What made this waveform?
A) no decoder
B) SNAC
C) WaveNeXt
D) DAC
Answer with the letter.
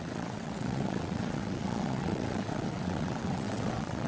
C